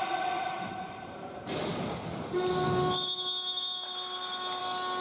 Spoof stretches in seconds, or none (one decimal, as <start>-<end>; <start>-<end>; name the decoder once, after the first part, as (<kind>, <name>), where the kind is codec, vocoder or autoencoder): none